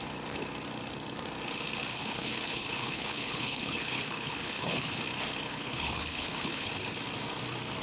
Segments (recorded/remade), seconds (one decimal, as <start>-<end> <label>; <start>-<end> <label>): 0.0-1.9 recorded; 1.9-5.0 remade; 5.0-5.5 recorded; 5.5-6.7 remade; 6.7-7.8 recorded